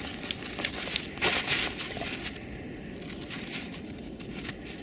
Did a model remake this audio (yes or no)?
no